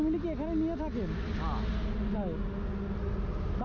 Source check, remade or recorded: recorded